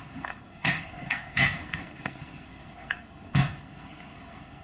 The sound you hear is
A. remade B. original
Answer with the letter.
A